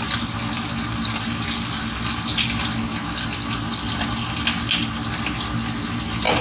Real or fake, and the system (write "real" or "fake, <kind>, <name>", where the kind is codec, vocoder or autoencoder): real